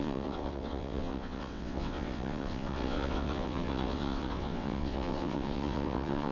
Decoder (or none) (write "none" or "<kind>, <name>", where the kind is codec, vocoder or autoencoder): vocoder, WaveNeXt